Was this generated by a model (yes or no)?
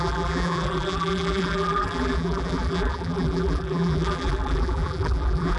yes